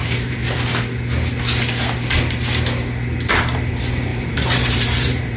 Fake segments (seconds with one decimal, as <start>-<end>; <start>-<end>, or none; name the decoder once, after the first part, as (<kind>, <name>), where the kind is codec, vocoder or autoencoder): 0.0-0.4 (vocoder, BigVGAN v2); 3.4-5.4